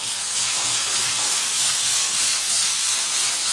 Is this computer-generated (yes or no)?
yes